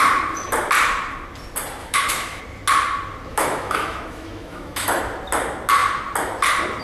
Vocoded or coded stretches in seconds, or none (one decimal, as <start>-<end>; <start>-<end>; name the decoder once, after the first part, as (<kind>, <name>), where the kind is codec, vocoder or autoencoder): 1.8-2.4 (autoencoder, DAC-VAE); 3.3-5.0